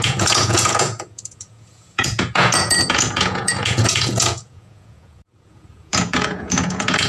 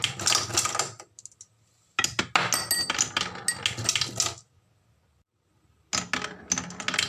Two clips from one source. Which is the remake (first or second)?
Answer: first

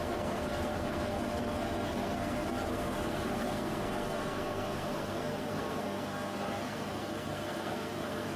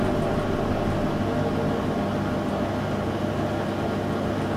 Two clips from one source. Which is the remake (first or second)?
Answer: first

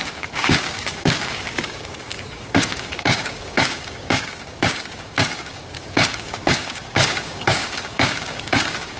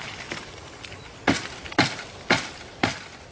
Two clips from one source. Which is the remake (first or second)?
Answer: first